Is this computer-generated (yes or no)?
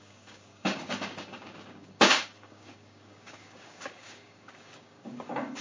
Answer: yes